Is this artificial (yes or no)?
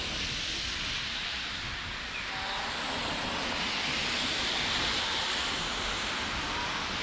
no